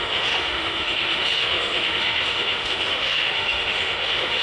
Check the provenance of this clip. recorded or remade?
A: remade